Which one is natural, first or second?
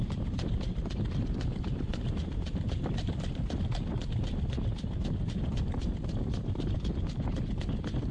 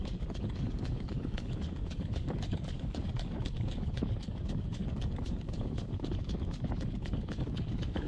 first